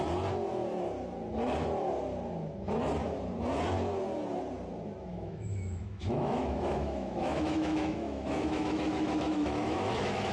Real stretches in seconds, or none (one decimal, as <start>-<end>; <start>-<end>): 0.0-5.1